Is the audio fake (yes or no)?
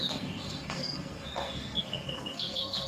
yes